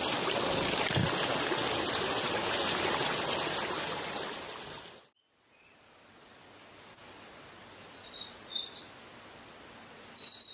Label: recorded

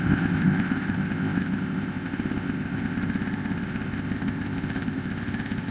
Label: remade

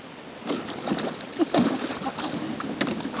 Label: recorded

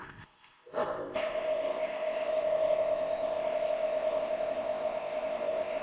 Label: remade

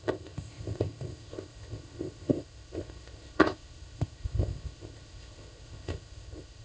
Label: remade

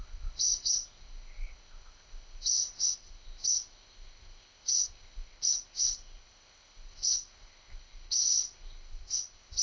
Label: remade